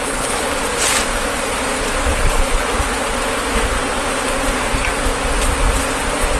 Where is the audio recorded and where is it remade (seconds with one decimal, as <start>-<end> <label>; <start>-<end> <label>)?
0.0-0.5 remade; 0.5-2.1 recorded; 2.1-2.7 remade; 2.7-6.4 recorded